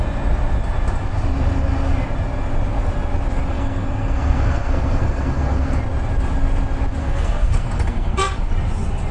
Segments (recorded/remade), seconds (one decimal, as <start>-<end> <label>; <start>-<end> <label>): 0.0-3.5 recorded; 3.5-5.8 remade; 5.8-7.0 recorded; 7.0-8.5 remade; 8.5-9.1 recorded